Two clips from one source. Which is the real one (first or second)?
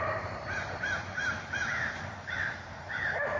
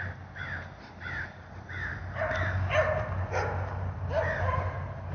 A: second